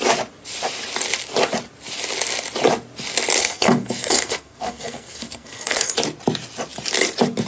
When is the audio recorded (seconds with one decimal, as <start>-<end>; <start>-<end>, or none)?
0.0-3.4; 5.9-7.5